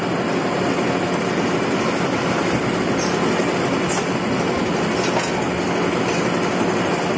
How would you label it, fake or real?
real